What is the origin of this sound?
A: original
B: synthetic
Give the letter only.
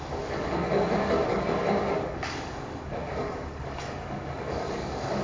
B